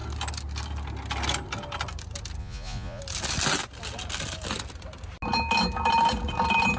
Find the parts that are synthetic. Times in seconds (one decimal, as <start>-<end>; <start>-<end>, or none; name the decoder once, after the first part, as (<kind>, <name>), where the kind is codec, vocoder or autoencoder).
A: 2.4-3.0 (vocoder, Vocos)